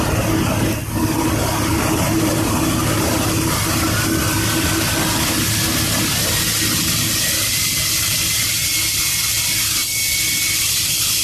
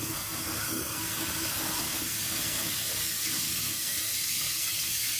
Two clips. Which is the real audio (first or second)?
first